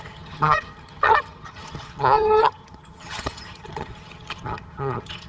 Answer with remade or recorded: remade